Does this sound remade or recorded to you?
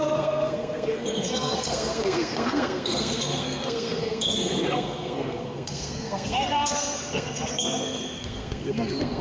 remade